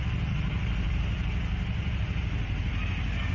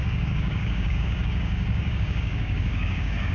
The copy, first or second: second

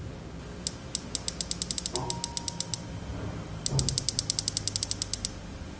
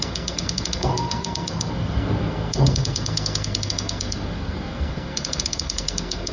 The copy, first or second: second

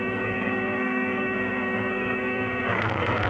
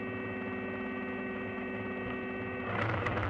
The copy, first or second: first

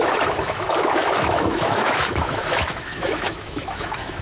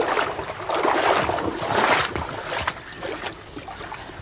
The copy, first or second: first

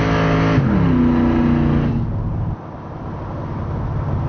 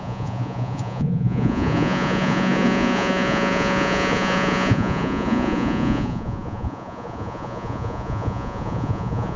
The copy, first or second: second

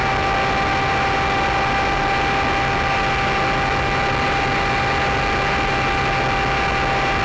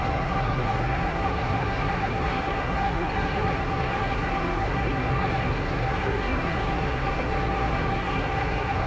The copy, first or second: second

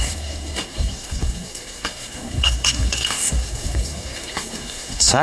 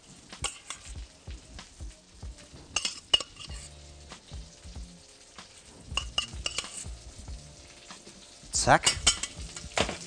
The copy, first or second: first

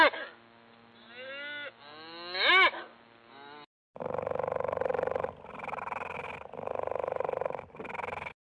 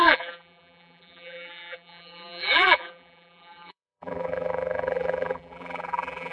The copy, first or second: second